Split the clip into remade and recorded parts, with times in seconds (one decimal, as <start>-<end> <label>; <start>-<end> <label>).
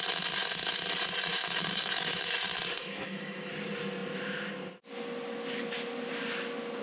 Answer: 0.0-1.3 recorded; 1.3-2.3 remade; 2.3-2.8 recorded; 2.8-3.5 remade; 3.5-6.8 recorded